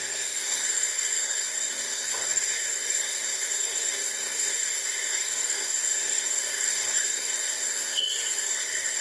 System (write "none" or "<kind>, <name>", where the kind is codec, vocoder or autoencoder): codec, SNAC